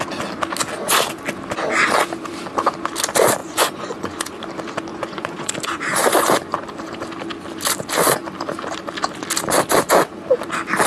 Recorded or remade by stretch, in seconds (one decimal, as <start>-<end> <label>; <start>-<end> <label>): 0.0-3.4 recorded; 3.4-4.3 remade; 4.3-4.9 recorded; 4.9-5.5 remade; 5.5-10.9 recorded